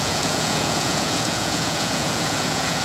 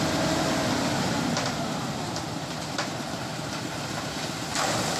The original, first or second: second